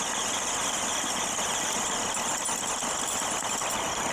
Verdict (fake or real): real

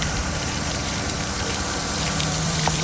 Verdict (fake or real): fake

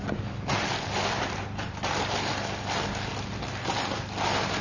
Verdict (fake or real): fake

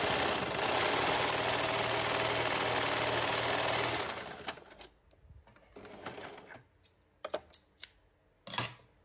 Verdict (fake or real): real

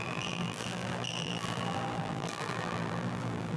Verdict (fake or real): fake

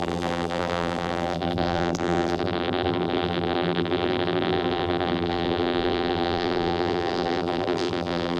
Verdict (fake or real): fake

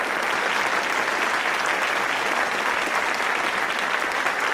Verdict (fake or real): real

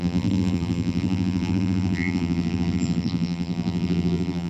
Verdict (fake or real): fake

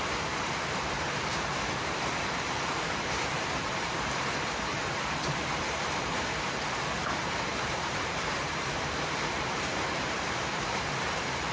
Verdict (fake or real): fake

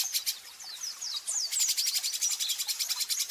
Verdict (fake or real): real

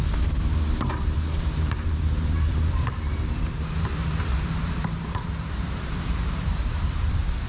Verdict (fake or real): fake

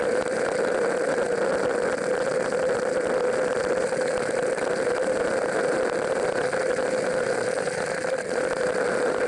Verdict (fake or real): real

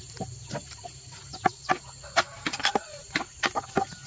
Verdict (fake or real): real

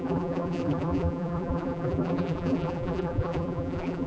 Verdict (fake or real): fake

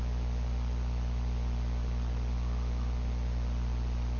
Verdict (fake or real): real